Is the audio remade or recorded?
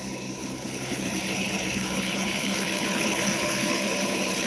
remade